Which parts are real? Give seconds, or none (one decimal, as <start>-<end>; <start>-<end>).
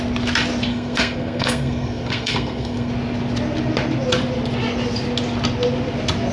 0.0-0.7; 2.9-6.3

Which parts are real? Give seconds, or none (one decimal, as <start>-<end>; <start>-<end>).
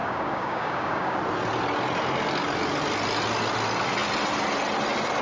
1.2-5.2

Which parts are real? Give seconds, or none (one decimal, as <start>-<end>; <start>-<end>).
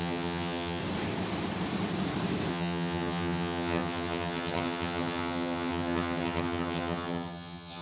0.8-2.5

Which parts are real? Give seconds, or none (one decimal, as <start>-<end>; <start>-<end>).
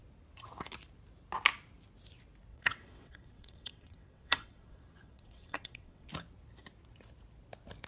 0.0-2.5; 6.1-7.9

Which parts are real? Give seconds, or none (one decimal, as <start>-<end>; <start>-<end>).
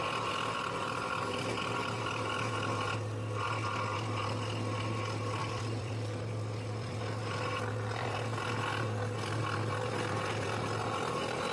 0.0-5.4; 7.0-11.5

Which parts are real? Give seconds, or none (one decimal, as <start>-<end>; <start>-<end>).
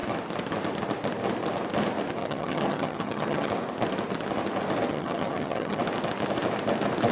0.0-2.2; 3.5-4.9; 5.8-7.1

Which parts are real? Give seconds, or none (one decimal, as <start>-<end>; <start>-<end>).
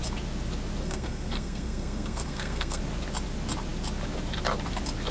0.0-0.8; 2.8-5.1